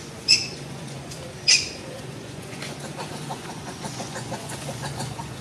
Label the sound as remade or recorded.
remade